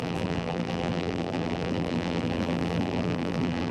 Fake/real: fake